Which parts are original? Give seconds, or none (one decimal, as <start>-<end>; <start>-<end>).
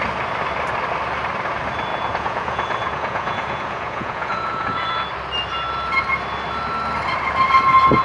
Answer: 0.0-1.9; 4.9-8.0